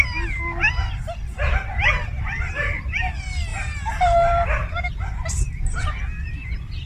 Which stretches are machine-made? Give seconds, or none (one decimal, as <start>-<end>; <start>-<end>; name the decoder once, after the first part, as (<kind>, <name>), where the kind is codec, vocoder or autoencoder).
3.5-4.9 (vocoder, BigVGAN v2)